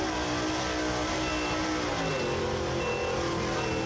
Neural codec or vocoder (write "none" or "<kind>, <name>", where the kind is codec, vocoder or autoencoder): none